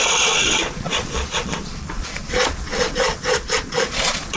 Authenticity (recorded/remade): remade